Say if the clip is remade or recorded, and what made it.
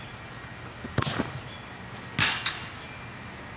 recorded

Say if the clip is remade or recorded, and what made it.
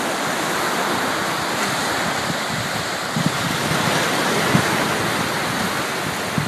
recorded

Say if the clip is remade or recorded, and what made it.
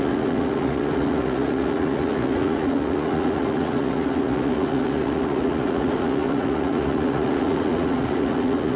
remade, vocoder, Vocos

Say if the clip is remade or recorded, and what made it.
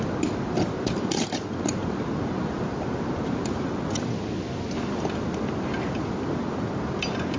recorded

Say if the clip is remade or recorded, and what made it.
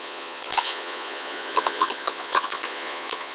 remade, vocoder, Vocos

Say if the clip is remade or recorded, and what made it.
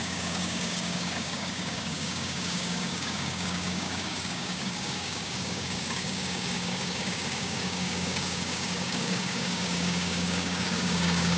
remade, codec, DAC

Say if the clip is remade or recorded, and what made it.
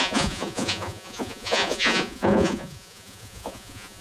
remade, vocoder, Vocos